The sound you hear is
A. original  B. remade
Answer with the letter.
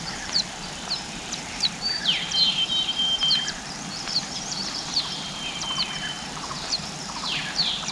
B